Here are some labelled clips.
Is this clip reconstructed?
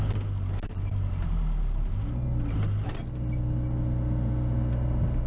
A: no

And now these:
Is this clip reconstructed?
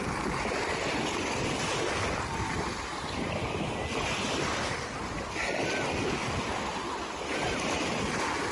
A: no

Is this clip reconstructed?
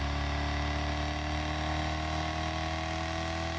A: no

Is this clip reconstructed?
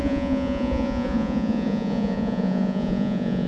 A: yes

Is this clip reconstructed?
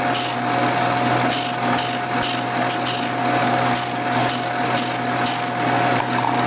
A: no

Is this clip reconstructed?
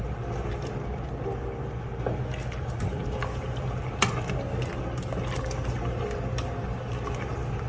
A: no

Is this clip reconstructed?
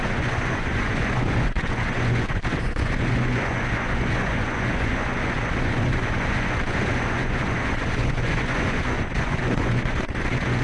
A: yes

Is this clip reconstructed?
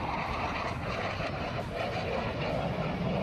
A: no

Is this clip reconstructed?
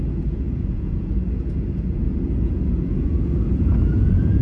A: yes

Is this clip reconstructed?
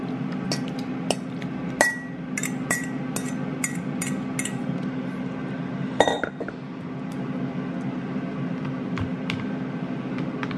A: no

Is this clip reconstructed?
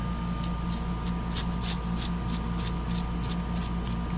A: no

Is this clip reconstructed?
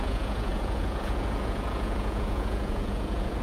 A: yes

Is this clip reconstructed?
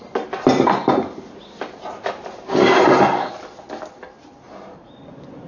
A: no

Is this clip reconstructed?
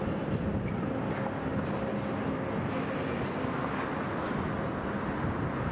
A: no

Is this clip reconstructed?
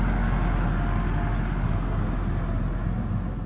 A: no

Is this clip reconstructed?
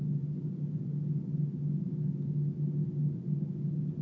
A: no